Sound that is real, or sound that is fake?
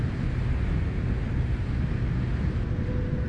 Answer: real